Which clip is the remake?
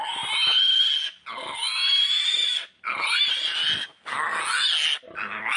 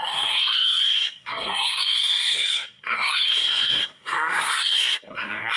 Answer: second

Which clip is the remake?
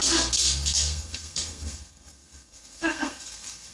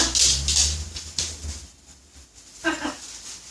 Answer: first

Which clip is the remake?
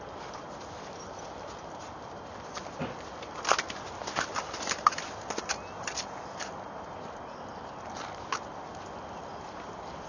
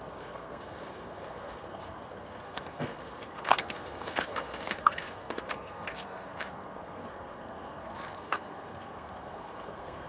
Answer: second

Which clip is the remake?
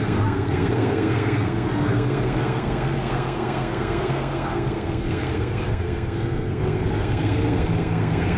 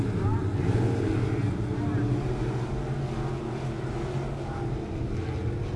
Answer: first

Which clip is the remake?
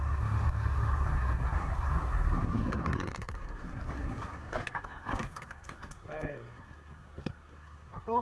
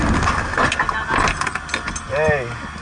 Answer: first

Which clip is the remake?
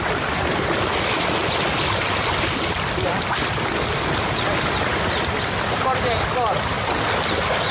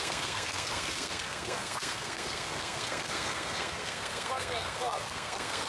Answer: second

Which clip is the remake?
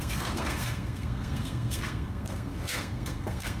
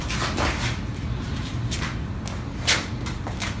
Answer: first